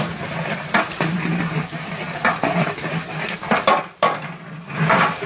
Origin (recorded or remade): recorded